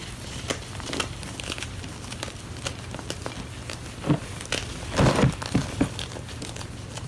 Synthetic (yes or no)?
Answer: no